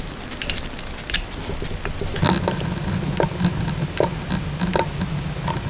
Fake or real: real